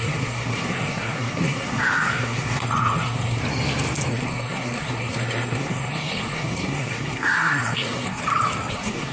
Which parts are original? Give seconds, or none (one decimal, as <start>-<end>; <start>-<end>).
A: 3.4-4.1; 8.2-8.7